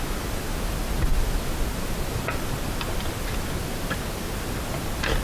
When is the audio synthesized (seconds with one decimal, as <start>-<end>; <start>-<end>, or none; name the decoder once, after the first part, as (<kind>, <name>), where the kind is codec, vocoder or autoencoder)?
none